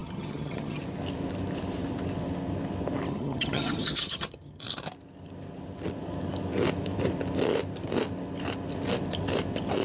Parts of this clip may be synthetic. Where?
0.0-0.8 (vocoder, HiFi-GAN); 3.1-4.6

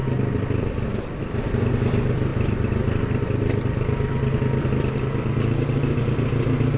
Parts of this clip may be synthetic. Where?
none

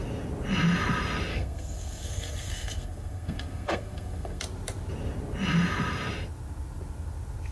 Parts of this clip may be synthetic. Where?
1.3-4.4 (codec, SNAC)

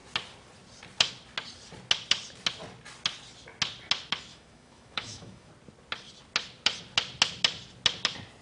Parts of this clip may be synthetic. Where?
4.3-5.5 (autoencoder, DAC-VAE)

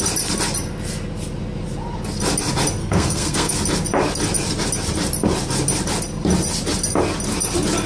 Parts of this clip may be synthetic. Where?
2.8-3.5 (codec, SNAC)